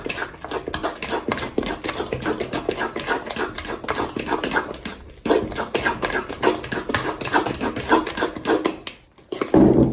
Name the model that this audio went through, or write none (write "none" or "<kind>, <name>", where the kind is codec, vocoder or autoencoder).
none